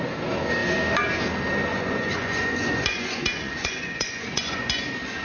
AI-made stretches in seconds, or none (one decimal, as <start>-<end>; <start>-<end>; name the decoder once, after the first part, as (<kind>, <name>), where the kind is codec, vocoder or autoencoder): 1.7-4.8 (vocoder, Vocos)